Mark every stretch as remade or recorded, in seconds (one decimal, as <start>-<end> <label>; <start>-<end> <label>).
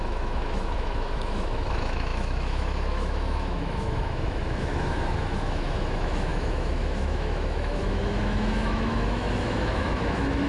0.0-10.5 remade